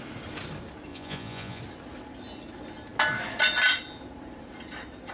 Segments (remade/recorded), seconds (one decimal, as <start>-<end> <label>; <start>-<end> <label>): 0.0-0.9 recorded; 0.9-1.6 remade; 1.6-5.1 recorded